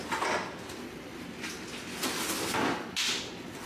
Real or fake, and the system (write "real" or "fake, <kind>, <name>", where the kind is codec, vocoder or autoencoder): real